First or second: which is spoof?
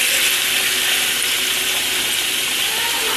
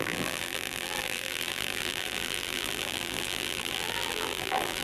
second